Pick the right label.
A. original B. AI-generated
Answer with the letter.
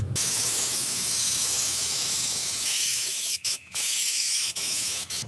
B